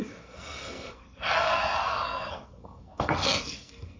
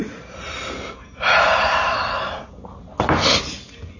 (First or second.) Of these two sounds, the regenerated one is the first